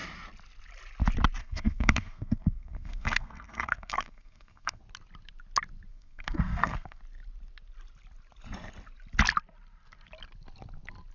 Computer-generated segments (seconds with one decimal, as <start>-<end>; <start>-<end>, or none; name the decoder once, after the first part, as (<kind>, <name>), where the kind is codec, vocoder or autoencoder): 1.4-4.8 (codec, SNAC); 5.9-7.0